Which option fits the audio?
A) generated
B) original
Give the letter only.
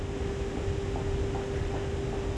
B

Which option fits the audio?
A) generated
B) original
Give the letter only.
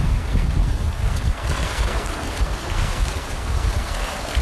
A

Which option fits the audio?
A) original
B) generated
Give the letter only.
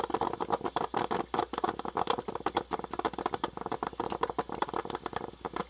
A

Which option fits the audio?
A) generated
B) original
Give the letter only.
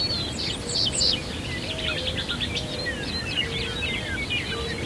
B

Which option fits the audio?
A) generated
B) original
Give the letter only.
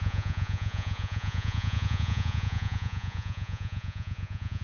A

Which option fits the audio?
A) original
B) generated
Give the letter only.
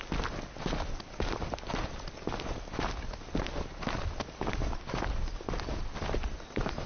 A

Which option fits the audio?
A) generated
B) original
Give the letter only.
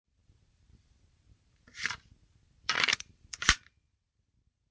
A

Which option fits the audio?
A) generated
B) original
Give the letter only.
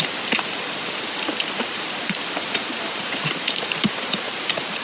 A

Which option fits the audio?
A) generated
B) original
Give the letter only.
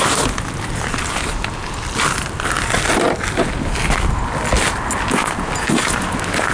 B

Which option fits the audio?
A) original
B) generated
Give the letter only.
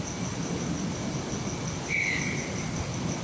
A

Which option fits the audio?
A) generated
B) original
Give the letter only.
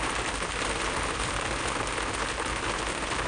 B